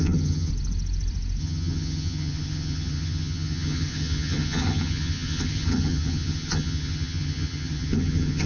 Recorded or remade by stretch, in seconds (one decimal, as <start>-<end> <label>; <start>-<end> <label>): 0.0-0.5 remade; 0.5-1.4 recorded; 1.4-8.5 remade